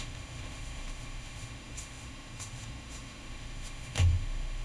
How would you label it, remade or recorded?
remade